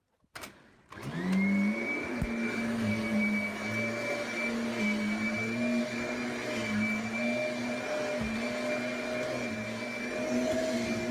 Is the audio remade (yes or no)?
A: no